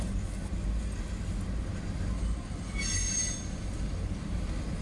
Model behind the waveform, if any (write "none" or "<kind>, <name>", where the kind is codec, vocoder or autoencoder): none